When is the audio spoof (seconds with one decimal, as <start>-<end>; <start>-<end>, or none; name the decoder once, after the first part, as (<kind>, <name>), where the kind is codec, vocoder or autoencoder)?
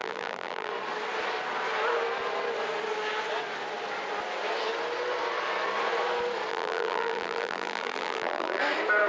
0.0-0.7 (vocoder, BigVGAN v2); 6.5-8.6